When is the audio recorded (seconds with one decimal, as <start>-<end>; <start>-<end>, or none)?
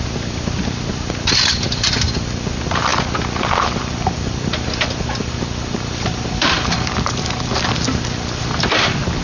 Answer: none